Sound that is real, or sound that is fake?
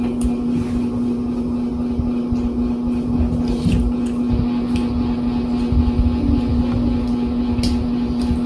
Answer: real